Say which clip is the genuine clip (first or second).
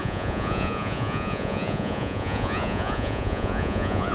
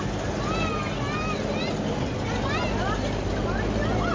second